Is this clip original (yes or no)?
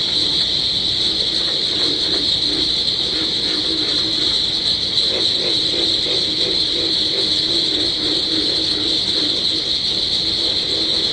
yes